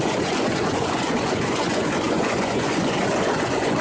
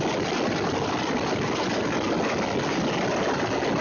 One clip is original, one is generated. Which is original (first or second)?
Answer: second